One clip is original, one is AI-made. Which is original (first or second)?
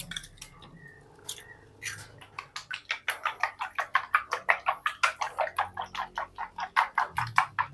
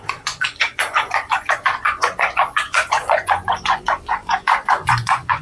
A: first